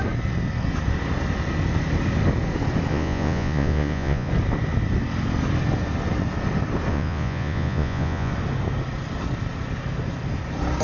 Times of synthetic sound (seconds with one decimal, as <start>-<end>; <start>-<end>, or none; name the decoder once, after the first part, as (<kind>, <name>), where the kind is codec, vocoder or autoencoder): 2.9-4.3 (vocoder, Vocos); 6.9-8.3